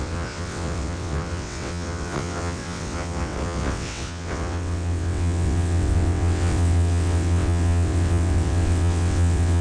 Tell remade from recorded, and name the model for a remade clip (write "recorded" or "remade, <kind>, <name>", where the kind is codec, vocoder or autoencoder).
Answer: remade, vocoder, WaveNeXt